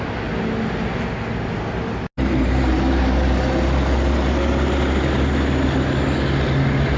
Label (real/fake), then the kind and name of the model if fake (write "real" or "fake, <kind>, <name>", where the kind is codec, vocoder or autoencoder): real